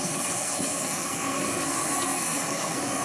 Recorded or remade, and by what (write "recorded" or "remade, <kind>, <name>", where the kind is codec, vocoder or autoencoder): remade, codec, SNAC